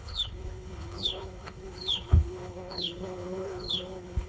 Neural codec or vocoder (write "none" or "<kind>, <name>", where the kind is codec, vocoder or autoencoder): codec, HILCodec